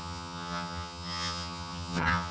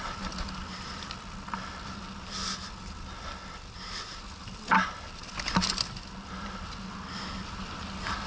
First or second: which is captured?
second